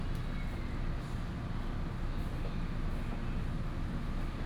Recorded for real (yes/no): yes